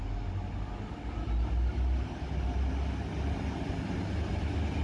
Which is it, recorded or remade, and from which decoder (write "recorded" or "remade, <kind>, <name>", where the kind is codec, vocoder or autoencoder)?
recorded